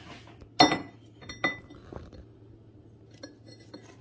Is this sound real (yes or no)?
yes